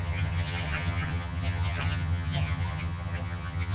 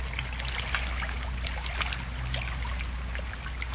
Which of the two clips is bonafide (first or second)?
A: second